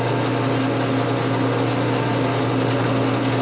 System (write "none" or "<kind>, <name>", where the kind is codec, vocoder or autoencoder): none